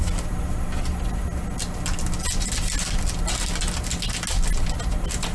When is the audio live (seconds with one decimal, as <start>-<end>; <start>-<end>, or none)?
0.0-5.3